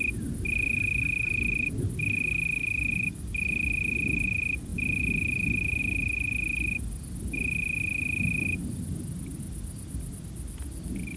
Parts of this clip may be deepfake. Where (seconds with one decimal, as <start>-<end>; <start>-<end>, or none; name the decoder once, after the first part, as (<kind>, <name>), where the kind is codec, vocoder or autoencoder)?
2.6-3.3 (vocoder, BigVGAN v2); 4.7-5.8